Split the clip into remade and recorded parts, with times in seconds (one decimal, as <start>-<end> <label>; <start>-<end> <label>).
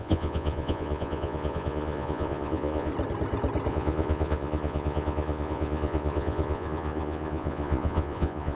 0.0-2.9 remade; 2.9-3.7 recorded; 3.7-8.5 remade